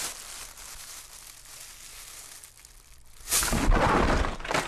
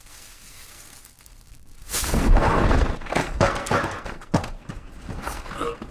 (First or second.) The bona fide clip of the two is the first